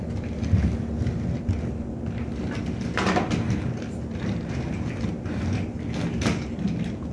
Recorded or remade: recorded